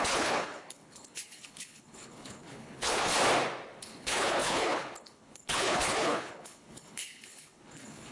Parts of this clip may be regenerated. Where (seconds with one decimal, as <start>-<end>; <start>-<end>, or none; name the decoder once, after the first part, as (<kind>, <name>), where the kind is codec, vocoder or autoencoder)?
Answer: 0.0-3.1 (codec, HILCodec); 3.8-8.1